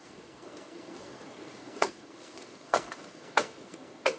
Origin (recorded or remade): remade